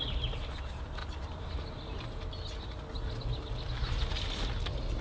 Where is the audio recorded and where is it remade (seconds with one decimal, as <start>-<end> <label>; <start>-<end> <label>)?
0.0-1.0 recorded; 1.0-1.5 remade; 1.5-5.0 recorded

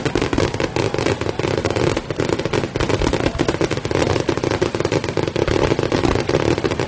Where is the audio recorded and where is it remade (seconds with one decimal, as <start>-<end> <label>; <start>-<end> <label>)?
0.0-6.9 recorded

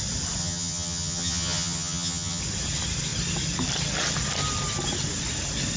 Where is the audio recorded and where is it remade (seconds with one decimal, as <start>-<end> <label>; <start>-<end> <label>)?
0.0-0.4 recorded; 0.4-2.4 remade; 2.4-5.8 recorded

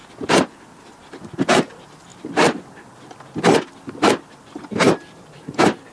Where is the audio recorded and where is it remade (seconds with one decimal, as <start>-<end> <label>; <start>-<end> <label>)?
0.0-5.9 recorded

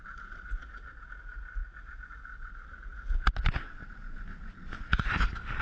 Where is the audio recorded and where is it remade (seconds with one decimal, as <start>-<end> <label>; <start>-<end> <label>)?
0.0-1.6 recorded; 1.6-2.1 remade; 2.1-5.6 recorded